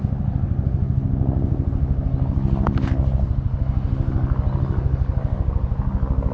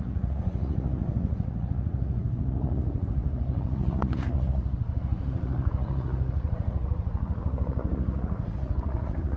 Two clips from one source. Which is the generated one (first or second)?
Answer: second